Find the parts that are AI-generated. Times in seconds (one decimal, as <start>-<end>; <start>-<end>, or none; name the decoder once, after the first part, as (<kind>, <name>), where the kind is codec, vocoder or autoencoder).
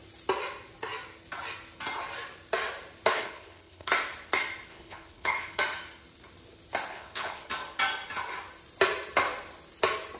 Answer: 3.1-3.9 (codec, HILCodec); 4.7-5.6; 6.9-7.5